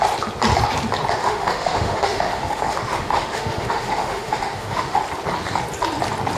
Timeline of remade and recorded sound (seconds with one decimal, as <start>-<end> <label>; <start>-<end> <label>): 0.0-1.2 recorded; 1.2-5.0 remade; 5.0-6.4 recorded